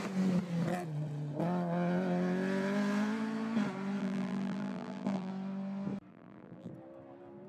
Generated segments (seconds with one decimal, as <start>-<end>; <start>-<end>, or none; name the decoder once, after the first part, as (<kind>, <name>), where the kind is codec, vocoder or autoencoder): 4.0-5.3 (vocoder, BigVGAN v2); 6.1-6.7